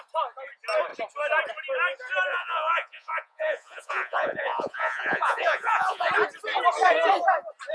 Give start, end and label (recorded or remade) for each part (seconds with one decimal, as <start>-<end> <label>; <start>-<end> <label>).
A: 0.0-2.3 recorded; 2.3-6.1 remade; 6.1-7.7 recorded